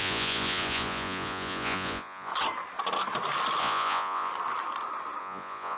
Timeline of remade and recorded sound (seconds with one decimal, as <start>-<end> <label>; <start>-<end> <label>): 0.0-2.3 remade; 2.3-3.6 recorded; 3.6-4.3 remade; 4.3-5.2 recorded; 5.2-5.8 remade